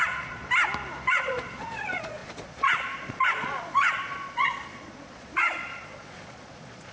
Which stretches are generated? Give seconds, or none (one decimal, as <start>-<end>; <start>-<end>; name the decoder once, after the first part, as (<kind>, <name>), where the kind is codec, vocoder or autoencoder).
0.0-0.4 (vocoder, Vocos); 1.1-6.9